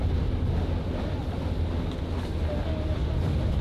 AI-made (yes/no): no